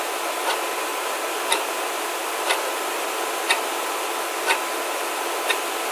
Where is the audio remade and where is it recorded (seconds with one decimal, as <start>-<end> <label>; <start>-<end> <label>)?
0.0-0.9 recorded; 0.9-2.3 remade; 2.3-5.9 recorded